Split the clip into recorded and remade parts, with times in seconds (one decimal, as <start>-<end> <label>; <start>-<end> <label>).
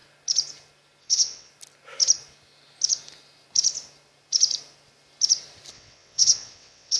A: 0.0-1.0 recorded; 1.0-1.5 remade; 1.5-5.7 recorded; 5.7-7.0 remade